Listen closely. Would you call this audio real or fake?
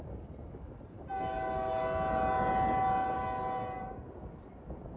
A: real